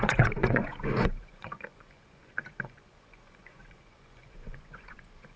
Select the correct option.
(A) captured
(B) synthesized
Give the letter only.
B